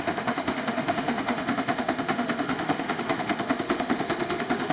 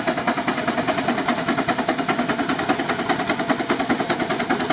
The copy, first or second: first